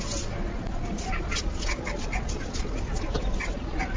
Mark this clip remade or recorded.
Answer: recorded